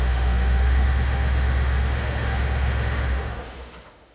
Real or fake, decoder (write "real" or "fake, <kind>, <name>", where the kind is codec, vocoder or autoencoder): fake, autoencoder, DAC-VAE